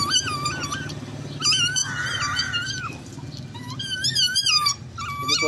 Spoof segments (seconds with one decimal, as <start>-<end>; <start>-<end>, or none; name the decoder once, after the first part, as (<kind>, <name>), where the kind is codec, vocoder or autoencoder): none